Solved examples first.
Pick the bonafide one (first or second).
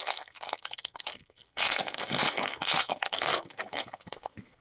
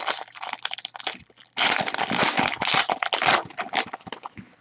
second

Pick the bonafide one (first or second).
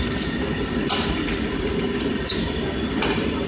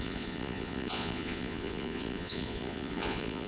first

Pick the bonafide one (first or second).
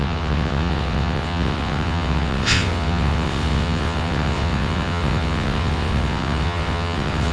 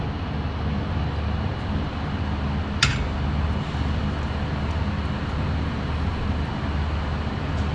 second